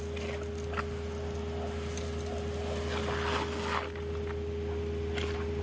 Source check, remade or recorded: recorded